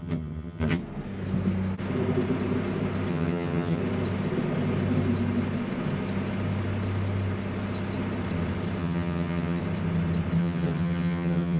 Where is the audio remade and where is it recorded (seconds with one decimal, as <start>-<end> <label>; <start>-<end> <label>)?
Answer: 0.0-0.8 remade; 0.8-3.1 recorded; 3.1-3.8 remade; 3.8-8.8 recorded; 8.8-9.6 remade; 9.6-10.4 recorded; 10.4-11.6 remade